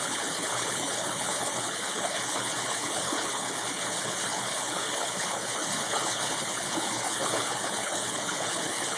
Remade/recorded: remade